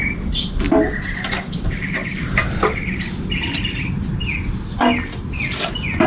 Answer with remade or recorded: recorded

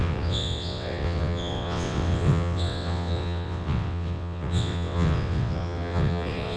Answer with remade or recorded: remade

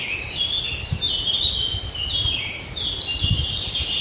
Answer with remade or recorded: recorded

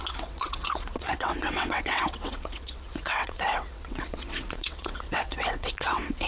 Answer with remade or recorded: remade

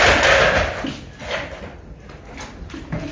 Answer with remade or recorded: recorded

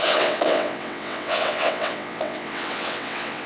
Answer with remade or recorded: remade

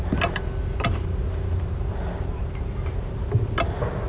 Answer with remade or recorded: recorded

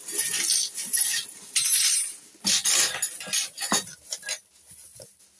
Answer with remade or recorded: recorded